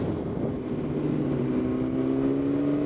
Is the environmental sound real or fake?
real